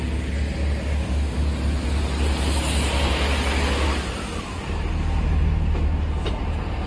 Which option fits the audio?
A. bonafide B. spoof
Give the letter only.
A